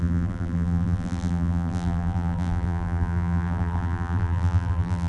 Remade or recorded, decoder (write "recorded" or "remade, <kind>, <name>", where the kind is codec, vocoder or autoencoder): remade, vocoder, BigVGAN v2